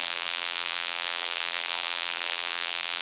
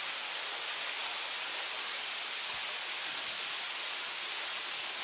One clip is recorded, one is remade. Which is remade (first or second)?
first